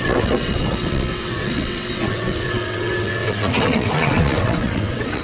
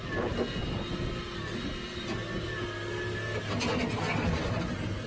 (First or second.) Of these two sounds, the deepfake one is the first